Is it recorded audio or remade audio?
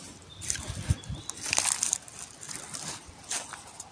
recorded